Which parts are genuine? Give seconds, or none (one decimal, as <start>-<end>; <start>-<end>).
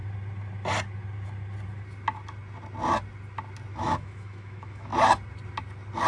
0.0-3.7; 4.9-6.1